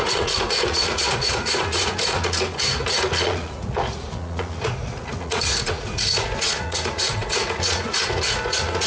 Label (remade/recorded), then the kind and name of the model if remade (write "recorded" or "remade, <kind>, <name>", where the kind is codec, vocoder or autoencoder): remade, vocoder, Vocos